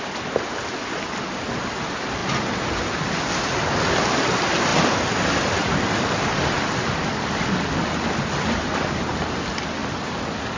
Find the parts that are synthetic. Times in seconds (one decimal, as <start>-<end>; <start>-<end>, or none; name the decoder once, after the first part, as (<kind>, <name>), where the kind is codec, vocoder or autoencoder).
none